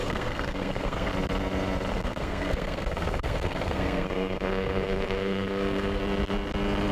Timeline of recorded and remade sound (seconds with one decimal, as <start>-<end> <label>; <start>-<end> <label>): 0.0-1.1 remade; 1.1-1.9 recorded; 1.9-6.0 remade; 6.0-6.9 recorded

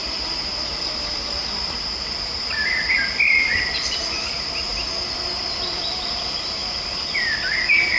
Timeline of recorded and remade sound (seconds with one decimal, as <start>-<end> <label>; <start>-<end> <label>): 0.0-8.0 remade

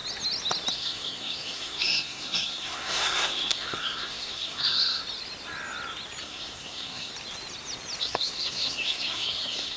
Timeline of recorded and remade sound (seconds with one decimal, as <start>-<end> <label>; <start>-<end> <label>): 0.0-0.7 recorded; 0.7-5.0 remade; 5.0-6.2 recorded; 6.2-7.1 remade; 7.1-8.0 recorded; 8.0-9.8 remade

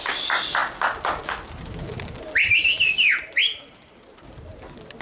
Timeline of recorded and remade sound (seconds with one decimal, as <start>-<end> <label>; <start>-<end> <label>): 0.0-5.0 recorded

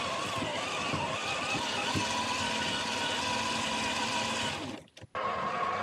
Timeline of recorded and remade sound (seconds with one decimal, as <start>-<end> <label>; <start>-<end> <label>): 0.0-5.8 recorded

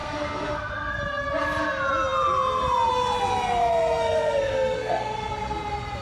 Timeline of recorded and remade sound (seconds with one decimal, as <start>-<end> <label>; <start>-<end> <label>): 0.0-0.7 remade; 0.7-3.6 recorded; 3.6-5.3 remade; 5.3-6.0 recorded